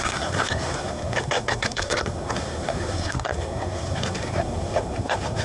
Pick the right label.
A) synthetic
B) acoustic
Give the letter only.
A